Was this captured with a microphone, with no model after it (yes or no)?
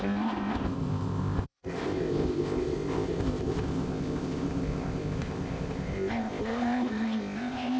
no